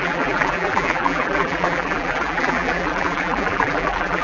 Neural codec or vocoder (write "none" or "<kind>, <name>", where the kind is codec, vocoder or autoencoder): vocoder, BigVGAN v2